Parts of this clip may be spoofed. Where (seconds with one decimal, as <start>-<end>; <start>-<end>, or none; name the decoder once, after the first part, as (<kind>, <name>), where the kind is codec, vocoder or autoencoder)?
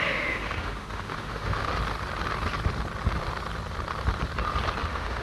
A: 0.0-1.7 (autoencoder, DAC-VAE); 4.8-5.2